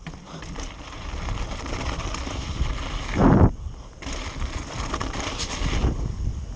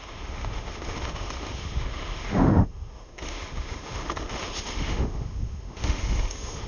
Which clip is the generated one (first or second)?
second